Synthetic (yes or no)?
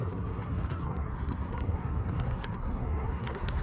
yes